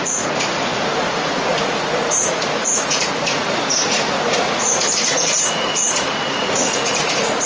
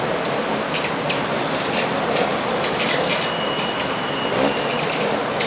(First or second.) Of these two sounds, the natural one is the second